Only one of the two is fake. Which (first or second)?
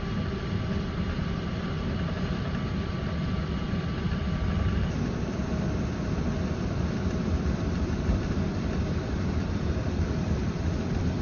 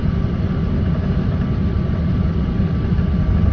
first